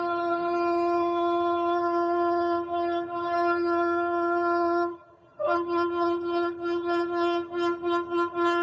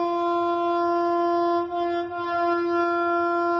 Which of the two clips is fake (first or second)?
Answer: first